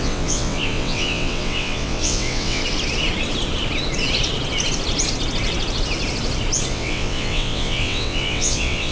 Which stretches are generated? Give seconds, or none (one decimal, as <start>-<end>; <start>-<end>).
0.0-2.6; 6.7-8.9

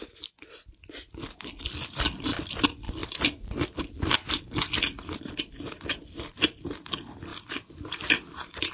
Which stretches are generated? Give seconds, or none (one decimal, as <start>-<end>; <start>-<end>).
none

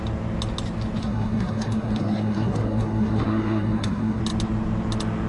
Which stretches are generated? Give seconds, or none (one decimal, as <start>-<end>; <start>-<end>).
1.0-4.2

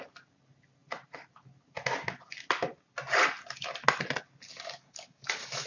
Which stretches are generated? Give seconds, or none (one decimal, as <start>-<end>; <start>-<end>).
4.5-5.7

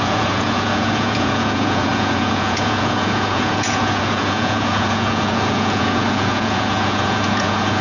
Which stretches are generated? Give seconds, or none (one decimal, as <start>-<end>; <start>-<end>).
0.0-7.8

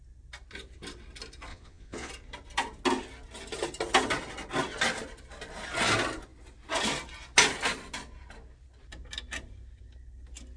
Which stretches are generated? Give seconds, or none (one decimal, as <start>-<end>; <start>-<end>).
1.5-2.1